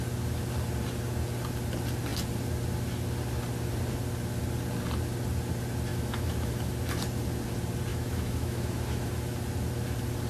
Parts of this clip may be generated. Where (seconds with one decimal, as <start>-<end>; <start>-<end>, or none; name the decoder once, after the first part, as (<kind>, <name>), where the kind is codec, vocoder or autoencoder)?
5.9-6.7 (autoencoder, DAC-VAE); 7.9-9.1